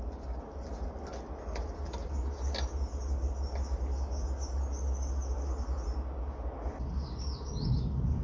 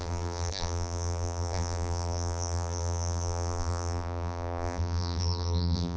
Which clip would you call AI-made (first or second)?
second